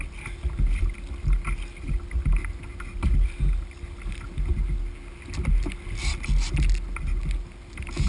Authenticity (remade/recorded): recorded